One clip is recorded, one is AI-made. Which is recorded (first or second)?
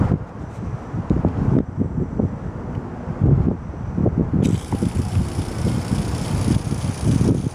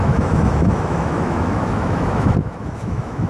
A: first